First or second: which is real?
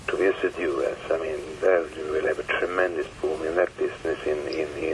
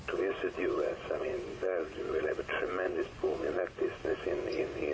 first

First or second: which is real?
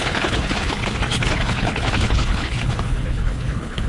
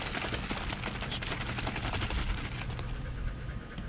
second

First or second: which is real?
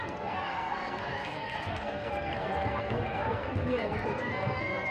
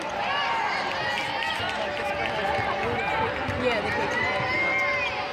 second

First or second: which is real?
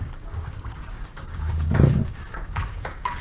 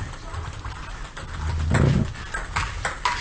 second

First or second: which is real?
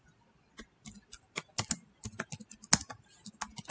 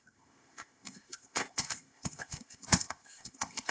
first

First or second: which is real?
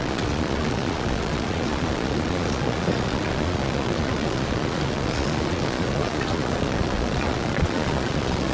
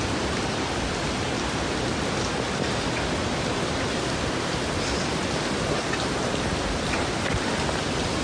second